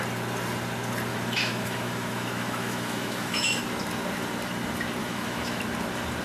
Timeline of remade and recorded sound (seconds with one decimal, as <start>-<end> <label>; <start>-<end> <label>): 0.0-1.1 recorded; 1.1-3.6 remade; 3.6-5.0 recorded; 5.0-5.6 remade; 5.6-6.2 recorded